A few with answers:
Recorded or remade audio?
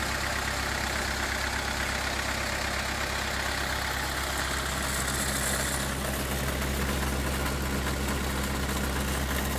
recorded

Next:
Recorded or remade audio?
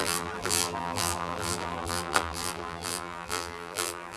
remade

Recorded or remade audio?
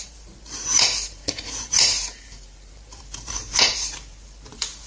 remade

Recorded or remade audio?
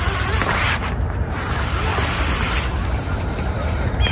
remade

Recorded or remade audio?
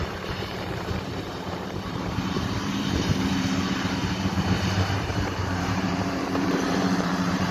remade